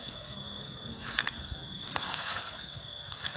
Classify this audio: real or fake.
fake